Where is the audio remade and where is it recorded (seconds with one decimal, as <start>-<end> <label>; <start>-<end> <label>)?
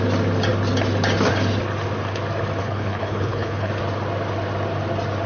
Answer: 0.0-2.6 recorded; 2.6-3.7 remade; 3.7-5.3 recorded